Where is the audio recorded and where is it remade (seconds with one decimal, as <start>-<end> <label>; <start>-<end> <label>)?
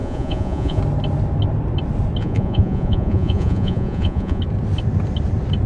0.0-0.8 remade; 0.8-2.2 recorded; 2.2-4.4 remade; 4.4-5.7 recorded